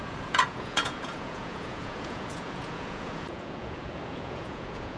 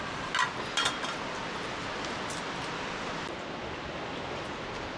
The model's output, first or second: first